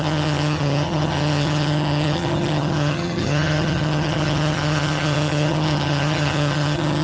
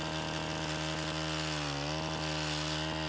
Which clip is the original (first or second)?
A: second